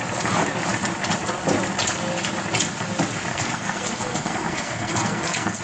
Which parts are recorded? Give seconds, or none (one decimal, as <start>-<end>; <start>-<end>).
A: 0.0-3.3